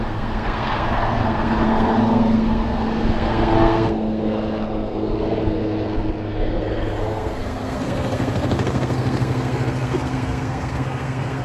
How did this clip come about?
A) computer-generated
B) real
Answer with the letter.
A